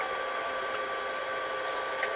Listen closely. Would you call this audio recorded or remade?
recorded